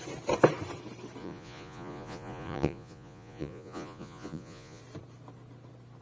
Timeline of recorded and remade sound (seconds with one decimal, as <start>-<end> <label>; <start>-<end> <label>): 0.0-1.2 recorded; 1.2-4.8 remade; 4.8-6.0 recorded